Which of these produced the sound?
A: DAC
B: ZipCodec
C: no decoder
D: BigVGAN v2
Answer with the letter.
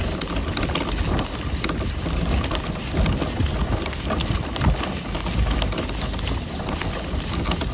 C